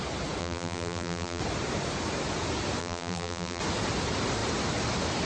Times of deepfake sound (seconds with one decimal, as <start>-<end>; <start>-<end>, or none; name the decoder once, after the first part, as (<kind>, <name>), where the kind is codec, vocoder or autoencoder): 0.4-1.4 (vocoder, BigVGAN v2); 2.8-3.6